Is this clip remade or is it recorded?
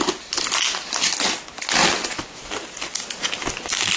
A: recorded